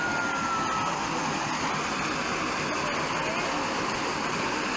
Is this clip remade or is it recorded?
recorded